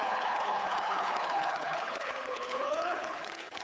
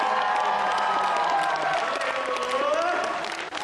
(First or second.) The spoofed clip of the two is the first